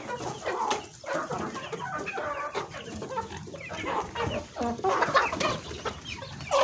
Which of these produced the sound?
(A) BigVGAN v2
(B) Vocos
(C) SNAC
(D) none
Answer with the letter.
D